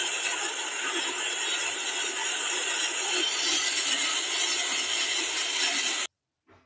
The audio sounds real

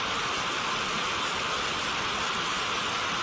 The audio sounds fake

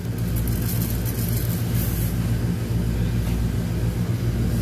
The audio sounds real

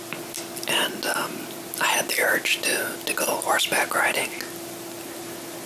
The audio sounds real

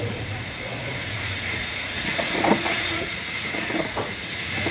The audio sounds fake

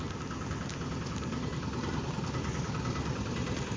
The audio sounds real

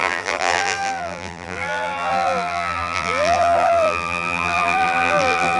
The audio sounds fake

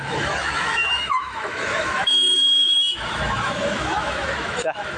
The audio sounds fake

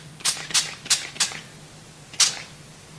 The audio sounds real